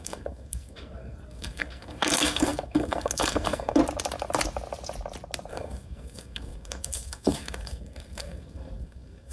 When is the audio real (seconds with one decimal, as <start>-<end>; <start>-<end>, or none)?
3.8-5.5